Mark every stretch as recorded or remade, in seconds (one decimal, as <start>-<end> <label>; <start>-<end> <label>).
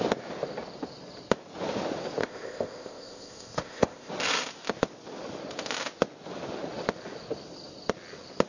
0.0-2.2 recorded; 2.2-4.1 remade; 4.1-8.5 recorded